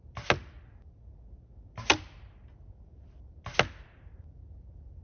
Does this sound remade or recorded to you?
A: recorded